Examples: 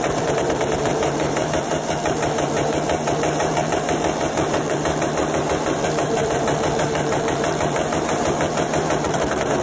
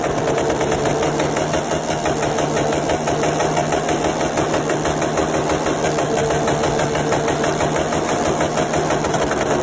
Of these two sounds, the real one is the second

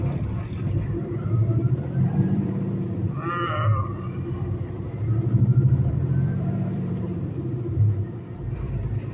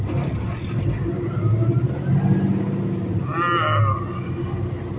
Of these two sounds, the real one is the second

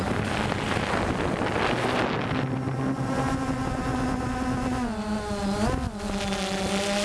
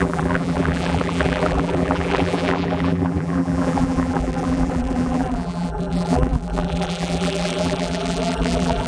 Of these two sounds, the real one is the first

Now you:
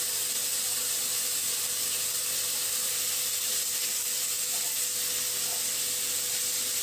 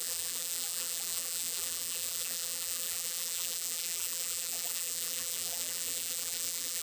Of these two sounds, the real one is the first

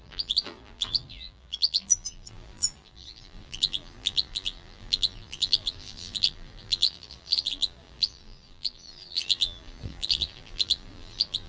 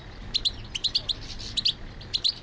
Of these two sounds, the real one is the second